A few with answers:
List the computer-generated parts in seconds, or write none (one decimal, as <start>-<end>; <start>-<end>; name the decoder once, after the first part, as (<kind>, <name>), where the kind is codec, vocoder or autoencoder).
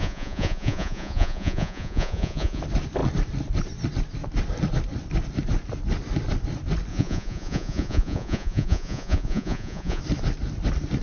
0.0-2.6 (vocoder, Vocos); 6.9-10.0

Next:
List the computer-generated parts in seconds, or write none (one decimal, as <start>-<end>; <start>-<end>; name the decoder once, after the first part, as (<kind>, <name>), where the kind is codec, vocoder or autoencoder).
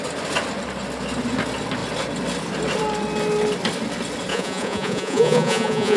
4.3-6.0 (vocoder, Vocos)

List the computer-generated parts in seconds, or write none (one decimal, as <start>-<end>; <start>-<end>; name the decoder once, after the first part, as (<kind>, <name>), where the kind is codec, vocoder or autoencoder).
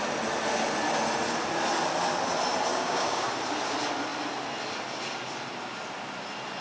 2.7-3.3 (codec, DAC)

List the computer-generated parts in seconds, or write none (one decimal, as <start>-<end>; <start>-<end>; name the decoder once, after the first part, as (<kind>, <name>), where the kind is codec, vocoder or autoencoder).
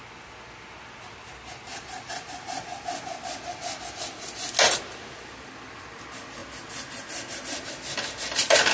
none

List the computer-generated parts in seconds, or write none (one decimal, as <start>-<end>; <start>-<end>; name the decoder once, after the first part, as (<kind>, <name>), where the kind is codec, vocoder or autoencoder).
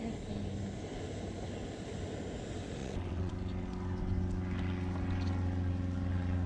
2.8-3.3 (vocoder, WaveNeXt)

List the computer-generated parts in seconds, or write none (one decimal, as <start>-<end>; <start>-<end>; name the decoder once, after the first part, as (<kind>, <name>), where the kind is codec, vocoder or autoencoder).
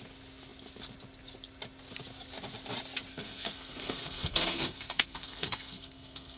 3.1-6.4 (codec, SNAC)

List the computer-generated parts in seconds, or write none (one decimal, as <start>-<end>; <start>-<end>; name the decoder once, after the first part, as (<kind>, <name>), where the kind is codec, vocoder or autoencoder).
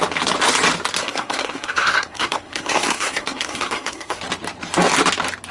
1.0-4.2 (codec, SNAC)